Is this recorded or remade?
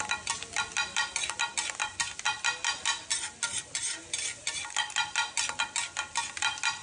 recorded